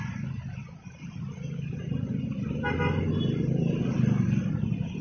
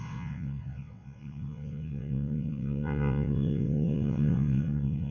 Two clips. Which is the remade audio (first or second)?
second